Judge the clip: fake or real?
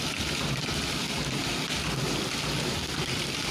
real